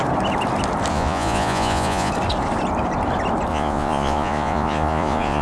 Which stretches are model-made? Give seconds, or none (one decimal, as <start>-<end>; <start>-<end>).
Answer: 0.9-2.1; 3.5-5.4